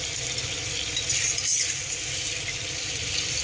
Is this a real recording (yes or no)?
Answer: no